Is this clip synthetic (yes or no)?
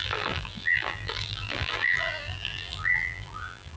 yes